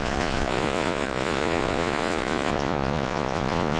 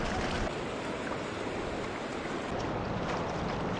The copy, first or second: first